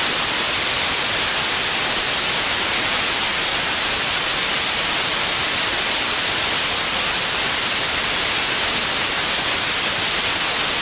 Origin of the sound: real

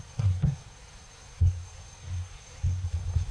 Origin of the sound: fake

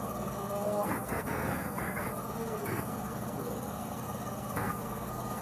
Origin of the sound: fake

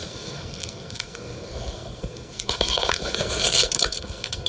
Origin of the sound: fake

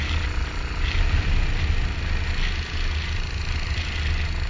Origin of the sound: real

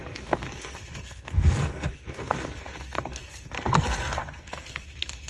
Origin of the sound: fake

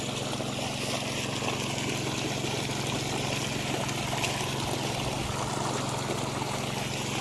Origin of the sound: real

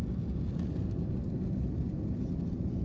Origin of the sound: real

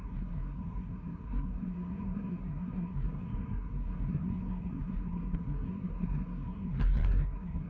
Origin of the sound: fake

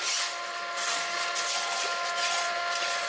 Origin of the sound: real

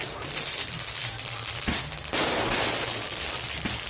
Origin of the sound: real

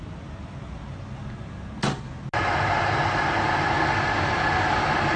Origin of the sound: real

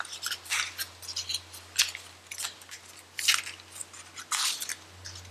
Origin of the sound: real